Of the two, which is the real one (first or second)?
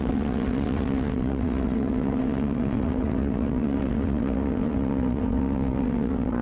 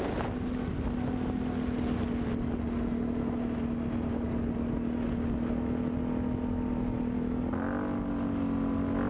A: second